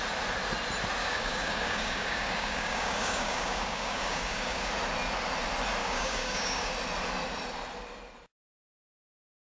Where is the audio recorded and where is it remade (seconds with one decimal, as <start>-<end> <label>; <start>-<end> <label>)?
0.0-1.0 recorded; 1.0-4.7 remade; 4.7-5.8 recorded; 5.8-6.7 remade; 6.7-9.5 recorded

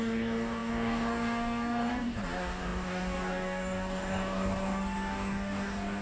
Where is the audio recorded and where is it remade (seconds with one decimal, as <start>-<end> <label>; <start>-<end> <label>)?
0.0-6.0 remade

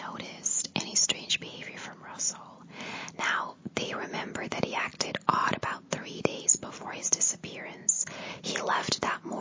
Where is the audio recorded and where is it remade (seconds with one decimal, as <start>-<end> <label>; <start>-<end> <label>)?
0.0-9.4 recorded

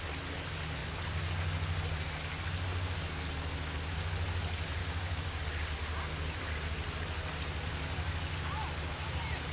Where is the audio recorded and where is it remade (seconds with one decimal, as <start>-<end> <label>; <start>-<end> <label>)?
0.0-4.8 recorded; 4.8-5.4 remade; 5.4-9.5 recorded